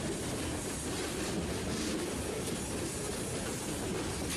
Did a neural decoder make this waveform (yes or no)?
no